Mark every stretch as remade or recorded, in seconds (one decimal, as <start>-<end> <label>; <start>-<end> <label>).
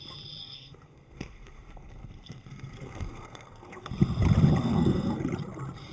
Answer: 0.0-0.4 recorded; 0.4-3.9 remade; 3.9-4.6 recorded; 4.6-5.2 remade; 5.2-5.9 recorded